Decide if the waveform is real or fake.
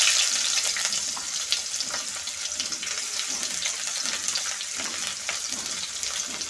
real